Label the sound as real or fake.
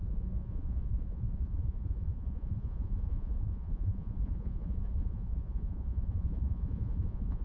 fake